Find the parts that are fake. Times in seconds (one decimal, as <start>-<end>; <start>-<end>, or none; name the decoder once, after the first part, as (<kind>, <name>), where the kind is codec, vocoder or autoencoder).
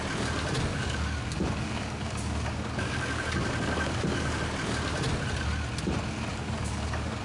0.7-4.4 (codec, DAC); 6.3-7.2